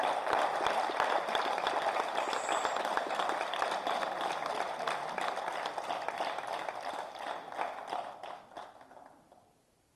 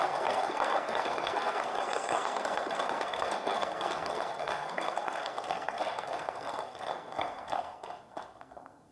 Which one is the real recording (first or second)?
first